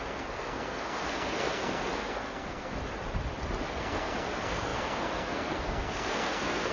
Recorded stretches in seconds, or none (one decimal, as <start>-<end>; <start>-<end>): 2.8-3.7